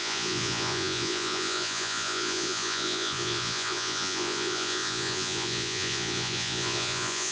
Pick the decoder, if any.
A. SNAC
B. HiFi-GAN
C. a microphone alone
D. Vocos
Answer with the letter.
D